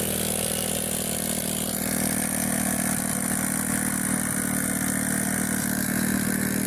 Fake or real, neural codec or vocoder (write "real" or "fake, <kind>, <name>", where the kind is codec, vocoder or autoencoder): real